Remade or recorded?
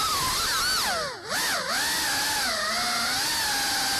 recorded